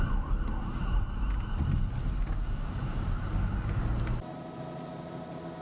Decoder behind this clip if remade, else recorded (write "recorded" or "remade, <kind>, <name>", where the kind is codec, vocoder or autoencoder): recorded